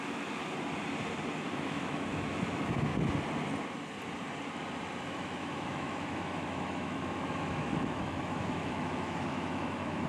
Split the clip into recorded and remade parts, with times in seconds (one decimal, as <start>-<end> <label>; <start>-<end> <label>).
0.0-0.4 remade; 0.4-1.3 recorded; 1.3-2.9 remade; 2.9-5.1 recorded; 5.1-10.1 remade